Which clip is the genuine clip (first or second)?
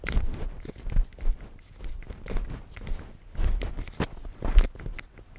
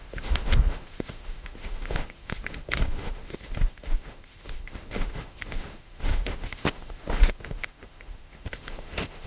first